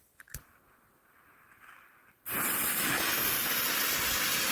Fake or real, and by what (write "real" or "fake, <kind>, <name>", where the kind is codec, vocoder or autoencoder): real